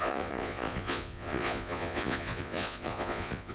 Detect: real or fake fake